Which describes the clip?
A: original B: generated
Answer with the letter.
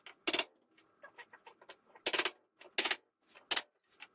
A